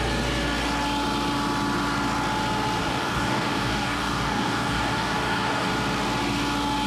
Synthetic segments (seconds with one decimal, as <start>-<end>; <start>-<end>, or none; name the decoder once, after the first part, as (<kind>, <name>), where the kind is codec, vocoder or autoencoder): 2.8-5.7 (codec, DAC)